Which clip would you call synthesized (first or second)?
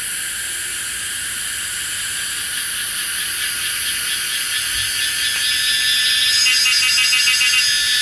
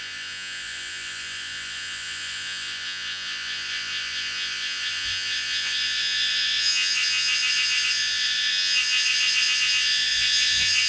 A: second